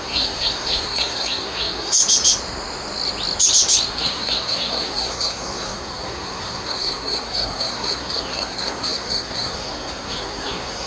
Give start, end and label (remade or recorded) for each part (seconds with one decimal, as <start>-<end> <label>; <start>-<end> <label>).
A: 0.0-2.0 remade; 2.0-3.9 recorded; 3.9-10.9 remade